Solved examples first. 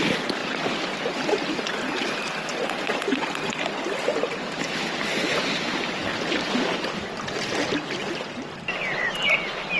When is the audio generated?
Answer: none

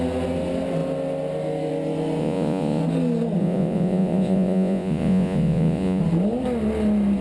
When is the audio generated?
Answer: 2.2-2.8 (vocoder, Vocos); 3.4-6.0